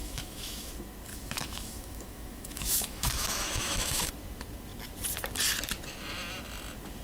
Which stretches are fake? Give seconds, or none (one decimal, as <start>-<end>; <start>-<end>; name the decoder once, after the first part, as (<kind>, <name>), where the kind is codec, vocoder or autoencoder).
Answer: 0.0-0.7 (autoencoder, DAC-VAE); 1.1-4.1